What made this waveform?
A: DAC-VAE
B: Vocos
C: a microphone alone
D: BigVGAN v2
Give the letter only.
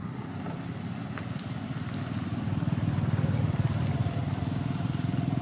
C